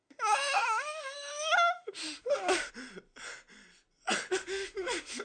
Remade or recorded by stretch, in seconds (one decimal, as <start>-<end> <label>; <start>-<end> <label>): 0.0-2.7 remade; 2.7-4.3 recorded; 4.3-5.2 remade